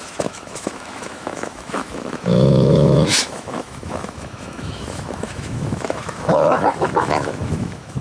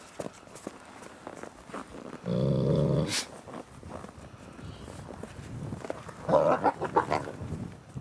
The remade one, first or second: first